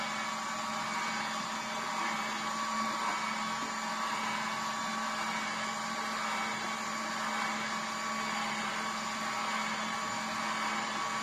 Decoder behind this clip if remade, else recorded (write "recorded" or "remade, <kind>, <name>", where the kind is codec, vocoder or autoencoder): recorded